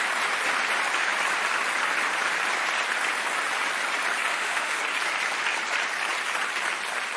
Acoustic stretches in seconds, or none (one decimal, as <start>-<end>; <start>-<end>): 0.0-4.3; 4.8-7.2